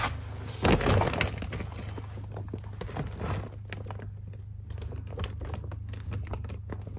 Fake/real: real